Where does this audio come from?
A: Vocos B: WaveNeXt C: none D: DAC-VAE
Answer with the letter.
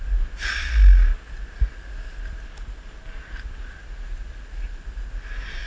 C